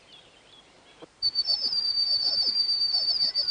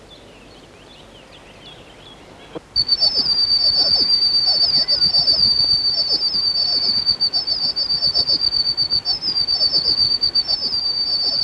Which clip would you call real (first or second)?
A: second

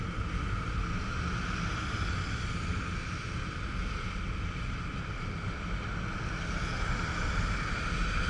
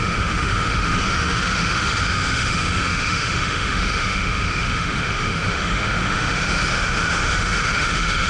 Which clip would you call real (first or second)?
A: first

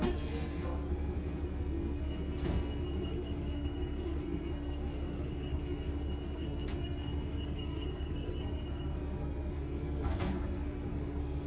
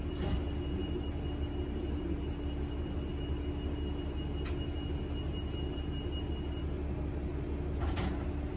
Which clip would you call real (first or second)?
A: second